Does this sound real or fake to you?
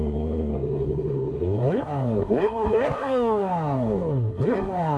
fake